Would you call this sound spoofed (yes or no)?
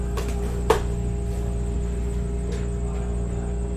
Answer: no